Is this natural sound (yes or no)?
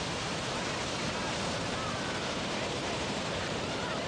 no